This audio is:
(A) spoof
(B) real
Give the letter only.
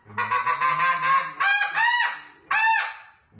B